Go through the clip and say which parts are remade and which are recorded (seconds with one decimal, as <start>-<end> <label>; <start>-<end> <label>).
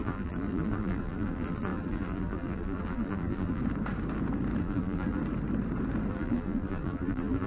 0.0-3.6 remade; 3.6-4.6 recorded; 4.6-5.2 remade; 5.2-6.1 recorded; 6.1-7.5 remade